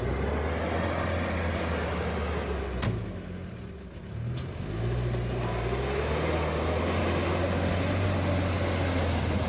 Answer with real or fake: real